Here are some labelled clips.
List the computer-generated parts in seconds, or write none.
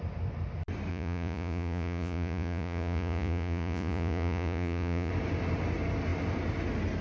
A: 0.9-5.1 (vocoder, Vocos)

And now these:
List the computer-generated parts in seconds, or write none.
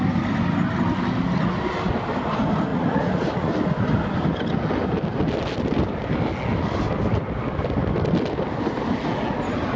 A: 2.7-3.5 (vocoder, Vocos)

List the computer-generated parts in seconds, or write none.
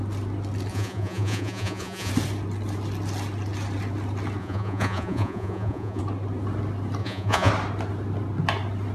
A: 0.7-2.1 (vocoder, Vocos); 4.4-6.0; 7.0-7.5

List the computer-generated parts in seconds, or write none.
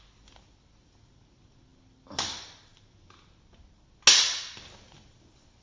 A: none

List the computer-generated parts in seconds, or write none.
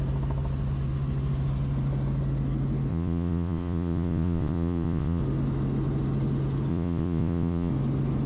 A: 2.9-5.2 (vocoder, Vocos); 6.7-7.7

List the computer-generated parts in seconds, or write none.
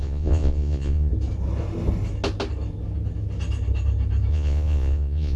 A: 0.0-1.1 (vocoder, Vocos); 4.3-5.4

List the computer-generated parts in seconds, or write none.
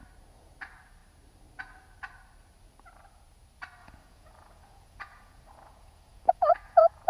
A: 3.8-7.1 (vocoder, Vocos)